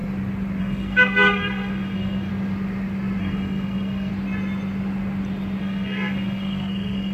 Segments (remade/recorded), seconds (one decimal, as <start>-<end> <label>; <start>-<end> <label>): 0.0-0.6 recorded; 0.6-2.3 remade; 2.3-3.2 recorded; 3.2-4.1 remade; 4.1-5.6 recorded; 5.6-7.1 remade